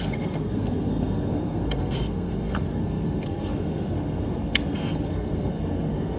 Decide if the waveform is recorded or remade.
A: remade